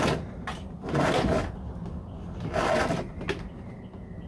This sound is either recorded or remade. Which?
recorded